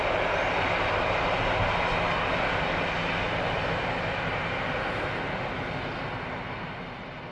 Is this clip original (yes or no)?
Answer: yes